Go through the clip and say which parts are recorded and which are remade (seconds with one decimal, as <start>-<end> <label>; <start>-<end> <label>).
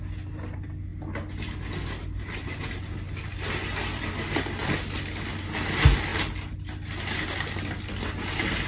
0.0-8.7 recorded